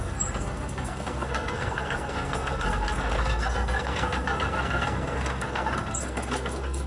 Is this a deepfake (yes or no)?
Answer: yes